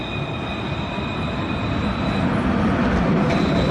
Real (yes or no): yes